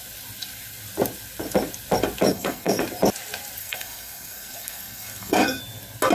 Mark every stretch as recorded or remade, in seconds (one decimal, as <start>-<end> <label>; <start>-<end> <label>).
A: 0.0-2.3 recorded; 2.3-2.8 remade; 2.8-3.6 recorded; 3.6-5.6 remade; 5.6-6.1 recorded